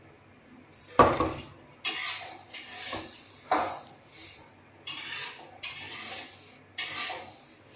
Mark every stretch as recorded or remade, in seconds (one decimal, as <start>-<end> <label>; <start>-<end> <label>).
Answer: 0.0-7.8 recorded